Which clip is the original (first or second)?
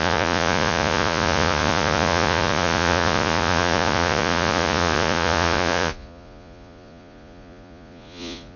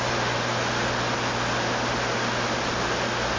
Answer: second